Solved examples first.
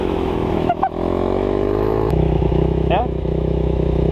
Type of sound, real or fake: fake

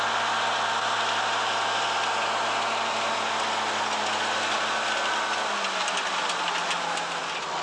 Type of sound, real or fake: real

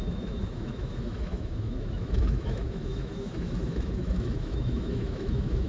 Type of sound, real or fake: fake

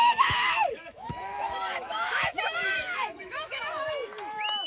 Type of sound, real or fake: fake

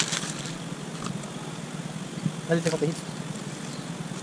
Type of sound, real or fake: real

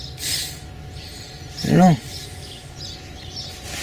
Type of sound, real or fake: real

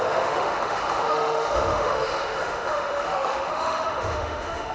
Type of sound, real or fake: fake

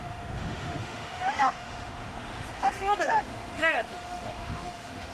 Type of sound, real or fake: fake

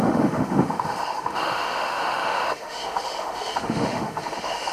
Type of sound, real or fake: fake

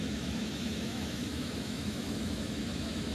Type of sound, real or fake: fake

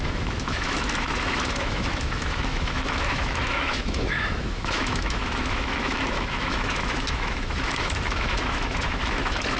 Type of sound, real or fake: fake